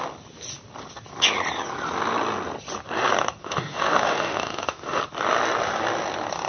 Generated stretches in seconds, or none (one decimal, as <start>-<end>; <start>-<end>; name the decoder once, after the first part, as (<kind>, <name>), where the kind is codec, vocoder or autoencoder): 3.4-5.0 (autoencoder, DAC-VAE)